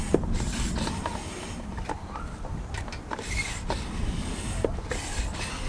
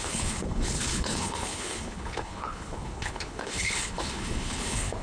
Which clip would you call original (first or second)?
first